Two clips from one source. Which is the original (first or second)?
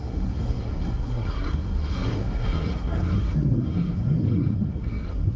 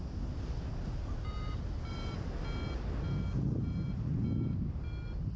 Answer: second